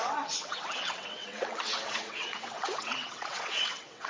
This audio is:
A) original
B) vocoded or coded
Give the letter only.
B